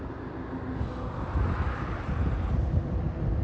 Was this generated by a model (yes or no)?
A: no